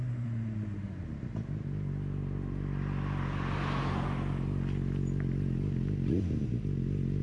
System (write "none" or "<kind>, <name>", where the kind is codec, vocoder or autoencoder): none